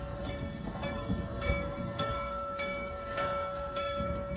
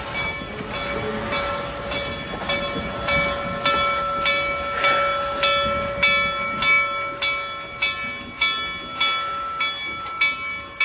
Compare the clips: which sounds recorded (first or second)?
second